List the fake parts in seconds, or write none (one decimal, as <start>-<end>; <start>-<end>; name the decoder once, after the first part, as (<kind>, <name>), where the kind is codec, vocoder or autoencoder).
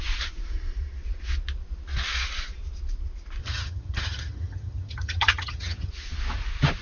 3.4-5.9 (vocoder, HiFi-GAN)